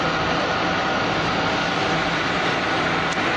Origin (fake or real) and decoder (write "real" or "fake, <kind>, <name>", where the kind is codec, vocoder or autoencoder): real